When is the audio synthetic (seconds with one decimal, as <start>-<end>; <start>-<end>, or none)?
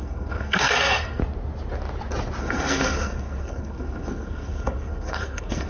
0.0-1.2; 2.4-5.7